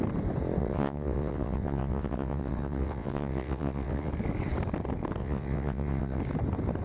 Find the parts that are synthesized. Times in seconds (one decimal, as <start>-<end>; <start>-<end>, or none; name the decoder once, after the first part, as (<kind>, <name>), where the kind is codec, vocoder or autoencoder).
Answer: 0.6-4.1 (vocoder, WaveNeXt); 5.2-6.2